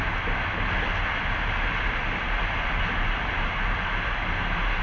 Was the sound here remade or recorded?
recorded